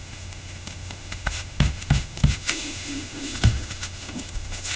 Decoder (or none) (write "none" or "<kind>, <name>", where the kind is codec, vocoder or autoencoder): autoencoder, DAC-VAE